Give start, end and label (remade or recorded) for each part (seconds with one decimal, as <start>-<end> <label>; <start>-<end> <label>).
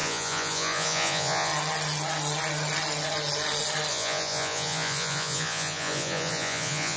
0.0-1.5 remade; 1.5-3.9 recorded; 3.9-7.0 remade